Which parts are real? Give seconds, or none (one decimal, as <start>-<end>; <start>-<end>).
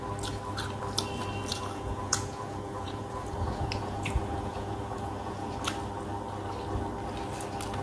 0.0-1.5; 5.5-7.8